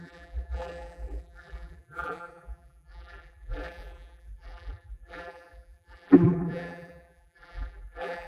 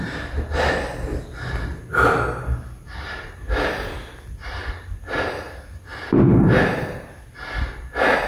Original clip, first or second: second